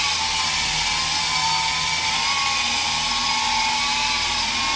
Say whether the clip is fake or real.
real